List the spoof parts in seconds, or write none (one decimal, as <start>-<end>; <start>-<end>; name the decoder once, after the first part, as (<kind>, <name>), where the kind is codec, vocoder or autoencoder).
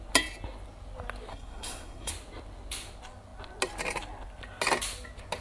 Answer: 1.3-2.1 (codec, SNAC)